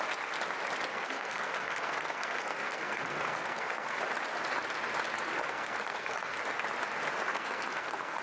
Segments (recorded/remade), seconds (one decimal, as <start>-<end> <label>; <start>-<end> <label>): 0.0-0.9 recorded; 0.9-4.0 remade; 4.0-5.4 recorded; 5.4-6.4 remade; 6.4-7.3 recorded; 7.3-8.2 remade